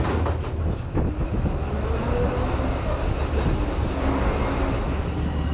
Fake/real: real